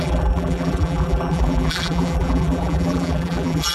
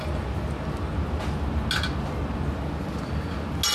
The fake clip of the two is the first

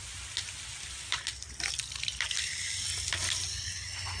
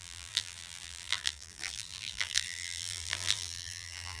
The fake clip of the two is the second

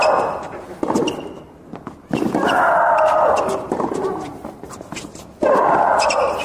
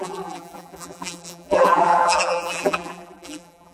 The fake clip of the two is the second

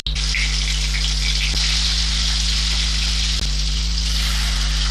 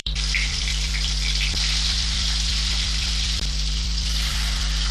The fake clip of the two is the second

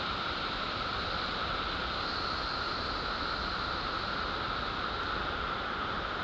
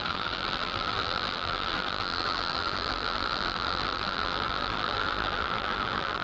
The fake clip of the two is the second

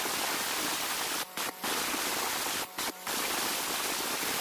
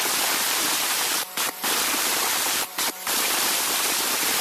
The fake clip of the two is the second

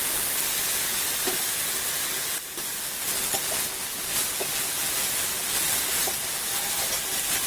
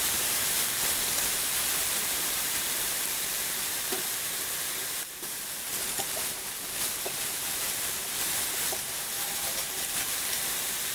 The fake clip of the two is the second